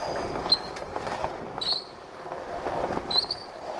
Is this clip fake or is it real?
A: real